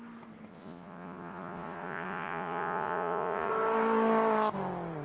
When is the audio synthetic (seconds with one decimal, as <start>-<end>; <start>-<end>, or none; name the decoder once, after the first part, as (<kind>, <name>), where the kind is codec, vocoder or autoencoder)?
0.5-3.5 (vocoder, Vocos)